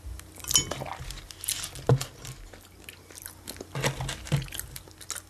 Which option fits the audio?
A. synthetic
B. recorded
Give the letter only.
B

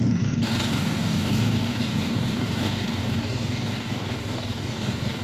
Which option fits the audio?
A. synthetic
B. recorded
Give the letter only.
A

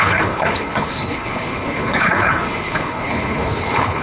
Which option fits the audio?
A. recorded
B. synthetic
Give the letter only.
B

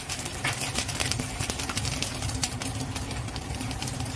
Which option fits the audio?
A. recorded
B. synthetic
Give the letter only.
B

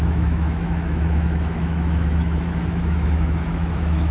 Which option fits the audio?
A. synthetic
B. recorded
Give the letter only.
A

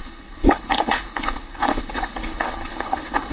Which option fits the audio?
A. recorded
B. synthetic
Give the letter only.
B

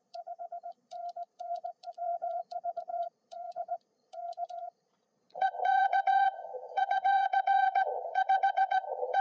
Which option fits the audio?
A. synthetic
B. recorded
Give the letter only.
A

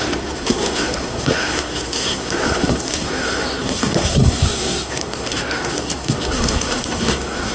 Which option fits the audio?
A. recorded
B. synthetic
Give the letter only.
B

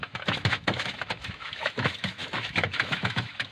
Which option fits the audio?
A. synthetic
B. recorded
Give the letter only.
A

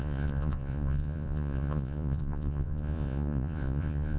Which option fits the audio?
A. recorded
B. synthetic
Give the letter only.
B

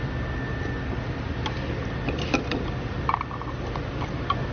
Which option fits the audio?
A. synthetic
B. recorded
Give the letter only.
B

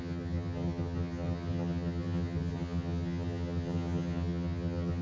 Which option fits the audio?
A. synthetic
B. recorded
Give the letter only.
A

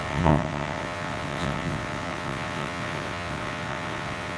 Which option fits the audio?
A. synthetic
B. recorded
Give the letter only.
A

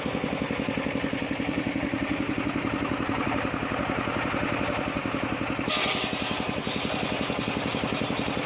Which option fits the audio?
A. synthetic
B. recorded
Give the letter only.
B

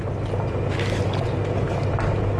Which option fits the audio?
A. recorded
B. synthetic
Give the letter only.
A